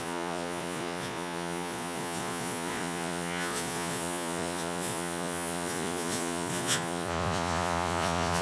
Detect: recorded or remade remade